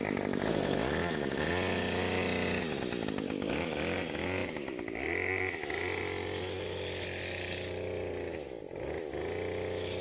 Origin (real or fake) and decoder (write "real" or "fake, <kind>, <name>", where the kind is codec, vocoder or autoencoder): real